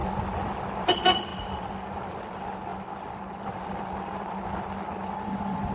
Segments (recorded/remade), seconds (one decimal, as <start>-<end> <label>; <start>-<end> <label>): 0.0-5.7 recorded

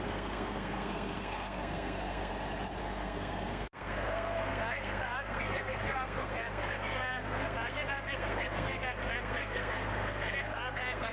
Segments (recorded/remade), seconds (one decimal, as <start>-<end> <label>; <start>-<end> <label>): 0.0-2.3 remade; 2.3-2.8 recorded; 2.8-11.1 remade

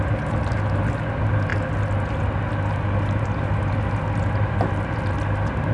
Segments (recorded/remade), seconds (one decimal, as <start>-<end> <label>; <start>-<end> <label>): 0.0-5.7 recorded

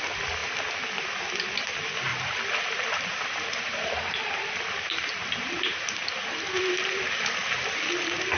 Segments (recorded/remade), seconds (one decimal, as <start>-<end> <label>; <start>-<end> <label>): 0.0-2.1 recorded; 2.1-7.0 remade; 7.0-8.4 recorded

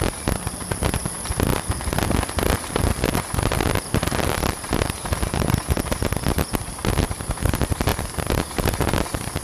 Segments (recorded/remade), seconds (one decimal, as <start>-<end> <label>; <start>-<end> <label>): 0.0-9.4 remade

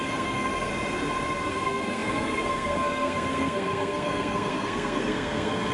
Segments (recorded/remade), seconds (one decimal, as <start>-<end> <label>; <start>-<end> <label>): 0.0-0.7 remade; 0.7-1.5 recorded; 1.5-5.7 remade

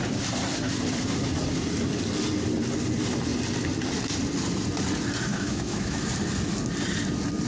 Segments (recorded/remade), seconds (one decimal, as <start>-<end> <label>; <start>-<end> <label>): 0.0-5.3 recorded; 5.3-6.1 remade; 6.1-7.5 recorded